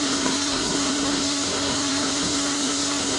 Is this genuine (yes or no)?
no